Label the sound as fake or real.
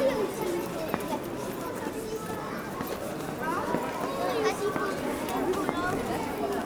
real